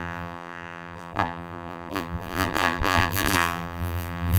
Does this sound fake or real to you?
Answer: fake